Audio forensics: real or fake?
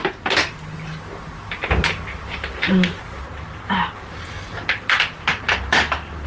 real